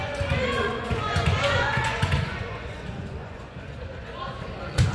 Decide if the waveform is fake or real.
fake